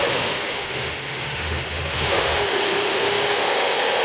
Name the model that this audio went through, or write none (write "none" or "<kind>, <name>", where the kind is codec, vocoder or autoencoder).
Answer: autoencoder, DAC-VAE